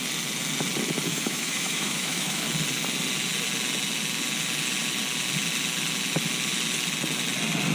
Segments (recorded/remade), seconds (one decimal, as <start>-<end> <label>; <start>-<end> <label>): 0.0-1.1 recorded; 1.1-2.4 remade; 2.4-7.7 recorded